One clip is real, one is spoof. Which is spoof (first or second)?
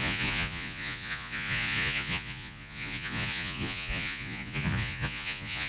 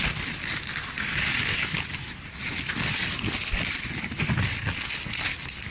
first